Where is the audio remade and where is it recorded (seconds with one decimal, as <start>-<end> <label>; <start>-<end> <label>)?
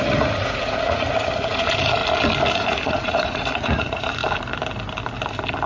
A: 0.0-2.0 remade; 2.0-2.5 recorded; 2.5-4.2 remade; 4.2-5.7 recorded